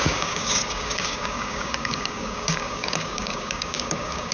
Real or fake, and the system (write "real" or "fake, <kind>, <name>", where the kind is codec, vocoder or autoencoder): fake, codec, DAC